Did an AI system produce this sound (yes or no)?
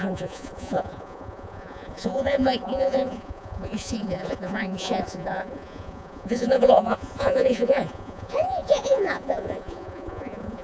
yes